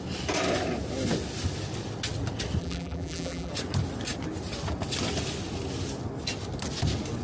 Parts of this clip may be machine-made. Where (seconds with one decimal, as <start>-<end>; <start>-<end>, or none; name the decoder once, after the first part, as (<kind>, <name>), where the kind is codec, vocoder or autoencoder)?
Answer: 2.6-3.5 (vocoder, BigVGAN v2)